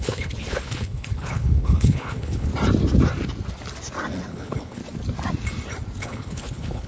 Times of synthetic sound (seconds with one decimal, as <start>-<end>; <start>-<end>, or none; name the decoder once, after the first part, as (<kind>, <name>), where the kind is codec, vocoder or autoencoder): 0.0-2.5 (codec, HILCodec); 4.3-4.8; 6.0-6.9